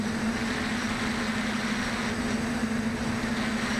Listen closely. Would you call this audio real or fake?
real